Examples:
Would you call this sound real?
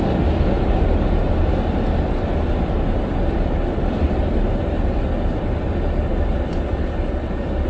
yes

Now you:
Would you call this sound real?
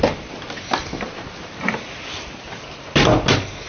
yes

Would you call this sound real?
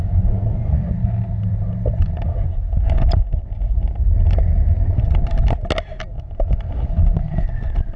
yes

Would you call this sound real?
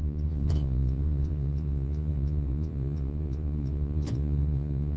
no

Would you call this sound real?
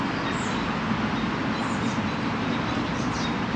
yes